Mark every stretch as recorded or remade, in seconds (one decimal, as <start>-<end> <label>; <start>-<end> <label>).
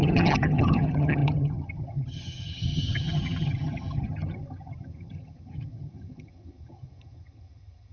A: 0.0-7.9 remade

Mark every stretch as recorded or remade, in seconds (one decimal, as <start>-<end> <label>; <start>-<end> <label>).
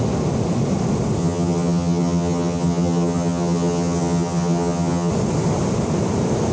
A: 0.0-1.2 recorded; 1.2-5.1 remade; 5.1-6.5 recorded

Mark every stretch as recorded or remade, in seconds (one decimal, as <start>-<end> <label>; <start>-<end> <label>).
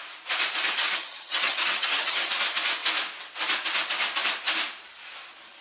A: 0.0-0.8 recorded; 0.8-2.3 remade; 2.3-5.6 recorded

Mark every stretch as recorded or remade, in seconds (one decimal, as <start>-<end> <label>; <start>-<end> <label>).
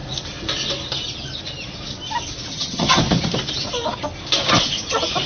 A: 0.0-2.5 recorded; 2.5-3.0 remade; 3.0-5.3 recorded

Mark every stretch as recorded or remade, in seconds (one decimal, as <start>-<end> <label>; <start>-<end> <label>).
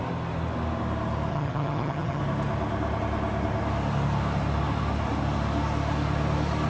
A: 0.0-1.3 recorded; 1.3-2.2 remade; 2.2-6.7 recorded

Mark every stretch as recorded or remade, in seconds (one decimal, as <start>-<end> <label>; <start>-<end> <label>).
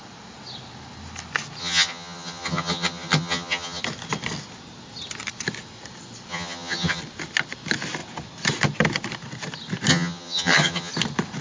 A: 0.0-1.6 recorded; 1.6-3.8 remade; 3.8-6.3 recorded; 6.3-7.0 remade; 7.0-9.9 recorded; 9.9-10.9 remade; 10.9-11.4 recorded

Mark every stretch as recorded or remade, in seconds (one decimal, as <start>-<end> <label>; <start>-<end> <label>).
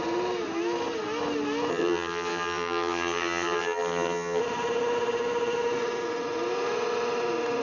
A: 0.0-1.7 recorded; 1.7-4.4 remade; 4.4-7.6 recorded